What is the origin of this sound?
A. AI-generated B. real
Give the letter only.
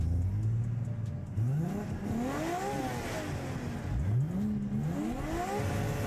B